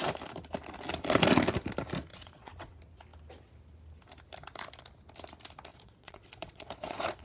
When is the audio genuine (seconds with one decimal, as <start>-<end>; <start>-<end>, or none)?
0.0-2.1; 2.7-5.7